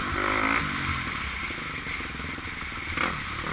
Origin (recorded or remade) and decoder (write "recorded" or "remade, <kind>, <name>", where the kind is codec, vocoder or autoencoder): recorded